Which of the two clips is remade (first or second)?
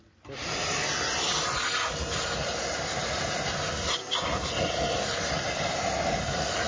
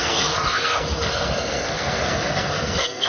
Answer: second